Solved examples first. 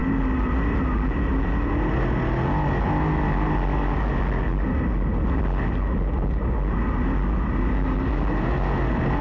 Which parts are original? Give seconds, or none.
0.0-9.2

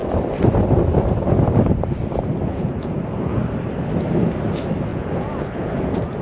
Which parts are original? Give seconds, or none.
0.0-2.5; 3.4-4.9

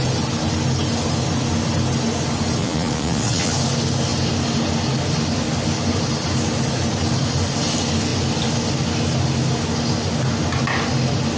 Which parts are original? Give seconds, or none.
0.0-2.6; 3.5-11.4

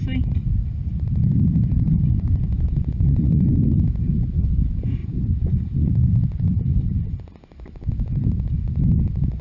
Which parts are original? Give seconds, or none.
0.0-2.5; 3.5-5.0; 6.1-9.4

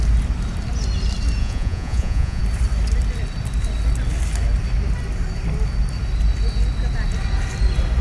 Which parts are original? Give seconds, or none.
0.0-1.4; 2.4-8.0